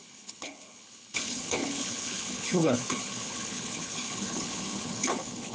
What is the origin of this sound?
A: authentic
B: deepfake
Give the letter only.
B